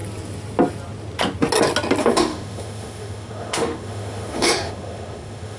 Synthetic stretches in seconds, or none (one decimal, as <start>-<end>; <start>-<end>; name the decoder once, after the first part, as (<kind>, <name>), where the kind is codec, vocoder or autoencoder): 2.0-5.6 (autoencoder, DAC-VAE)